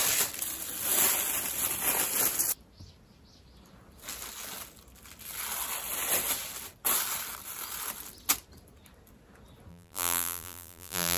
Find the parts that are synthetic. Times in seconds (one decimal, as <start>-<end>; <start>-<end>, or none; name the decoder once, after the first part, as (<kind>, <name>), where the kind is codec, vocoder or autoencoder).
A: 9.7-11.2 (vocoder, BigVGAN v2)